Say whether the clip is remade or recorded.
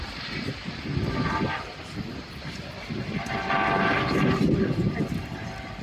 recorded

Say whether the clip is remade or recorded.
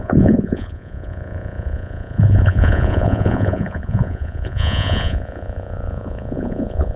remade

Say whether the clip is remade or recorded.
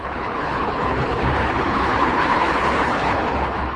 remade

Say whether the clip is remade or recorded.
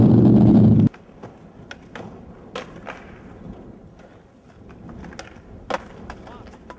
recorded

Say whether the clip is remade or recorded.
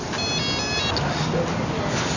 recorded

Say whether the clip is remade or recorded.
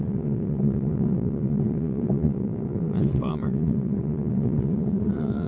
remade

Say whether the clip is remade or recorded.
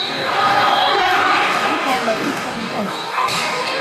remade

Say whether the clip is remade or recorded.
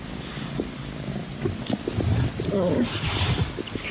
recorded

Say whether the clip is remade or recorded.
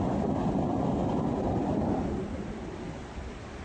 recorded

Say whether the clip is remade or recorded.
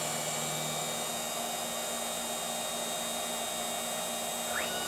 recorded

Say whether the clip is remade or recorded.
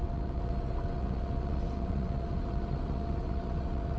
remade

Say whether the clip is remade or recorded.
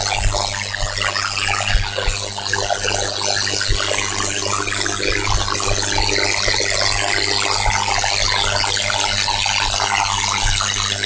recorded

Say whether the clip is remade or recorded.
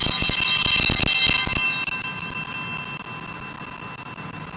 recorded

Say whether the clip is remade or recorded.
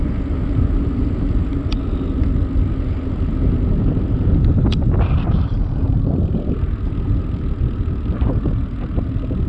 recorded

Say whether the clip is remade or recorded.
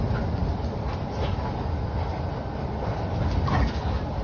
recorded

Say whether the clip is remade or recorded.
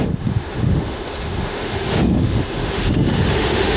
remade